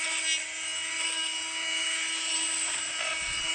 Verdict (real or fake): real